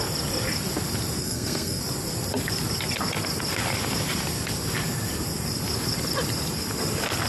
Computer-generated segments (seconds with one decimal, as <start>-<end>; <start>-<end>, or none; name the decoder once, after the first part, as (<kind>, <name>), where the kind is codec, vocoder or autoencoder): 1.2-1.8 (codec, SNAC)